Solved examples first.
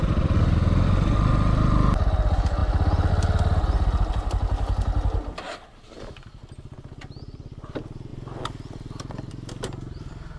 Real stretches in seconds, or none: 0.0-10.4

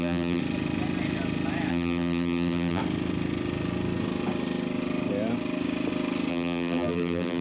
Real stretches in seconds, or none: 0.4-1.7; 2.8-6.3

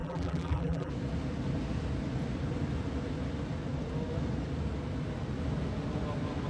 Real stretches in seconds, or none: 0.9-6.5

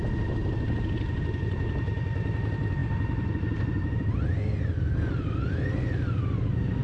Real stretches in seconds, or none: 0.0-2.8; 4.1-6.8

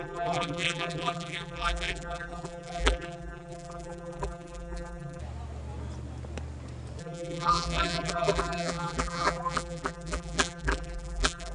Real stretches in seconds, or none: 5.2-7.0